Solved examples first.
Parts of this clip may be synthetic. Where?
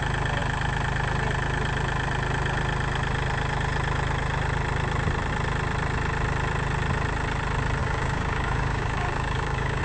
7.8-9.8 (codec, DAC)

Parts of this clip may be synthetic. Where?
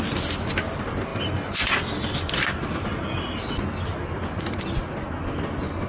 none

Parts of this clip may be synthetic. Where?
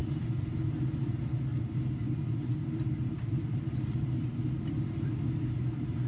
none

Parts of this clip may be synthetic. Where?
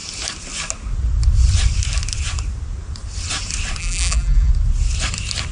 3.8-4.5 (vocoder, BigVGAN v2)